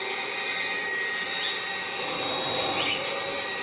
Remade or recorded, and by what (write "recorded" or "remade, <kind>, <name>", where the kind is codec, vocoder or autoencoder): recorded